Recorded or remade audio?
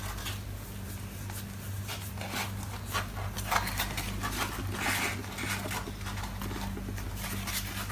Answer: recorded